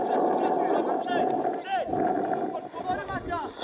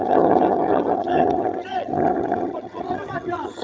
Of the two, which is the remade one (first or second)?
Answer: second